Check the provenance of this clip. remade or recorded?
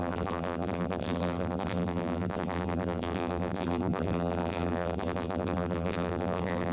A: remade